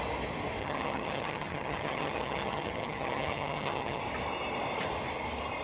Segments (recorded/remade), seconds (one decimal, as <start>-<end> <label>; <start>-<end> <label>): 0.0-0.6 recorded; 0.6-4.0 remade; 4.0-5.6 recorded